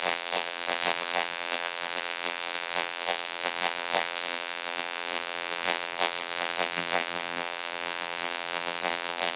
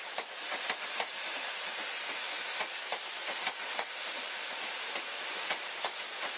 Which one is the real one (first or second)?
second